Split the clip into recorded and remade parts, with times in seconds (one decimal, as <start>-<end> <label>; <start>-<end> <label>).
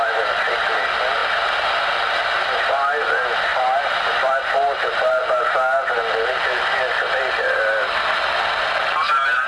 0.0-9.5 recorded